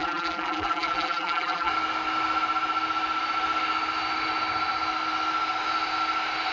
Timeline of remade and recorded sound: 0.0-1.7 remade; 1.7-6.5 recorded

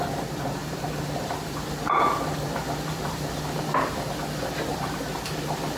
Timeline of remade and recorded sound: 0.0-0.6 recorded; 0.6-4.1 remade; 4.1-4.7 recorded; 4.7-5.8 remade